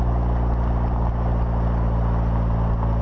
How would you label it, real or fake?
real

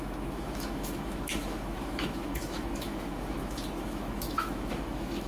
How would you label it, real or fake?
fake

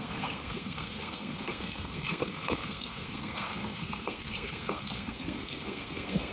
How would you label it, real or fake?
fake